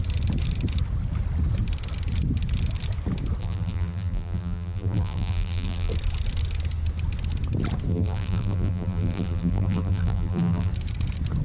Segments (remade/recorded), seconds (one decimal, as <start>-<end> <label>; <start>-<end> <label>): 0.0-3.4 recorded; 3.4-5.9 remade; 5.9-7.9 recorded; 7.9-10.7 remade; 10.7-11.4 recorded